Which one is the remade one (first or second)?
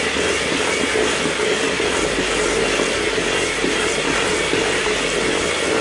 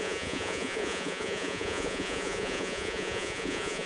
second